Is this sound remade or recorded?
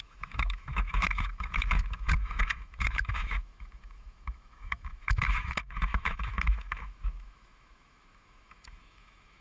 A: remade